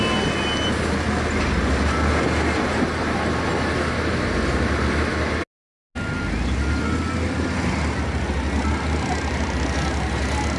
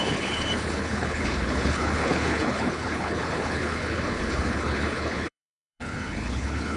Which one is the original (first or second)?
first